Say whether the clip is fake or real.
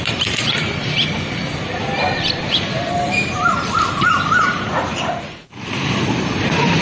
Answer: fake